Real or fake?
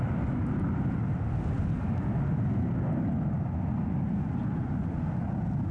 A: real